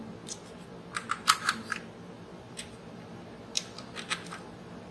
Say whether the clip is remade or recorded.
remade